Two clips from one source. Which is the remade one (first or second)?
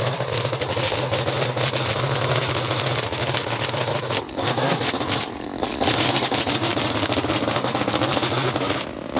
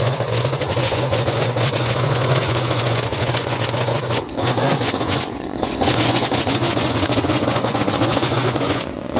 second